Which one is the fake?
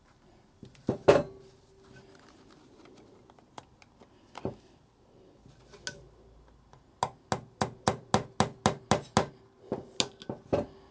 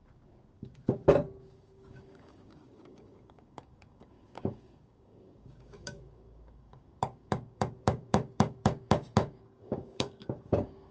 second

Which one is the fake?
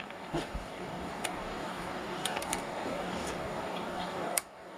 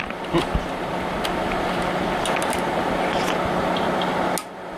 first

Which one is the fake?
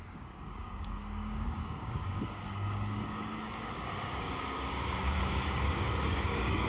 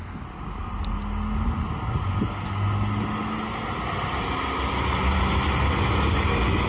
first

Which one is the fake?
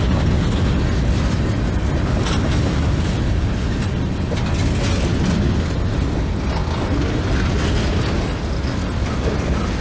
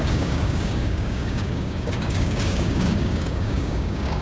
second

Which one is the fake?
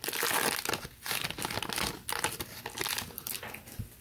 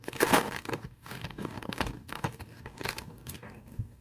second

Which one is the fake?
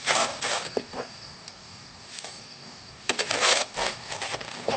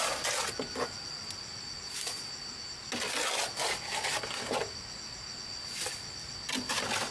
first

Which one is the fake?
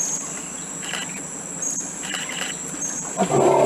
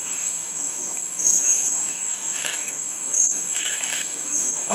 second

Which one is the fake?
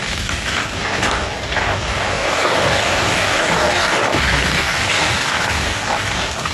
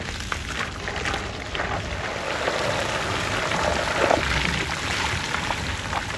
first